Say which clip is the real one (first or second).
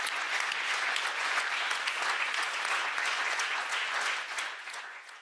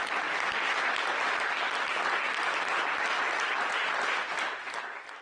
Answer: second